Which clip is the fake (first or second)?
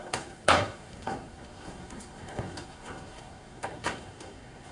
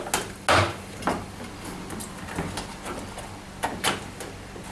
first